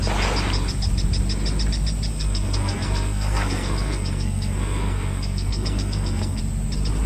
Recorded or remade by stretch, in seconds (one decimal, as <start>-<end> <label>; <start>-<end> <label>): 0.0-2.1 recorded; 2.1-6.4 remade; 6.4-7.1 recorded